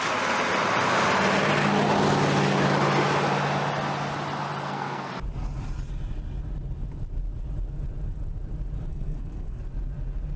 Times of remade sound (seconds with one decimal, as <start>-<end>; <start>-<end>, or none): 4.6-5.1; 8.9-9.6